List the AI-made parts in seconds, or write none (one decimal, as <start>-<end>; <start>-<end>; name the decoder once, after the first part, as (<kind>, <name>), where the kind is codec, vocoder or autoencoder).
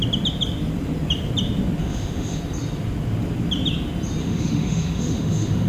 1.8-2.4 (autoencoder, DAC-VAE); 4.2-5.7